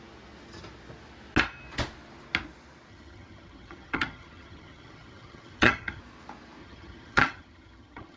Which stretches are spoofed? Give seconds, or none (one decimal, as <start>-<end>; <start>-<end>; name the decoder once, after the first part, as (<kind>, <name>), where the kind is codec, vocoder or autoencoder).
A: 2.9-6.0 (vocoder, HiFi-GAN); 6.6-8.2